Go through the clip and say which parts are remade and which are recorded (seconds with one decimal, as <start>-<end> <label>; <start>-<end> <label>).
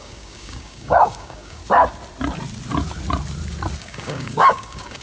0.0-1.6 remade; 1.6-3.8 recorded; 3.8-5.0 remade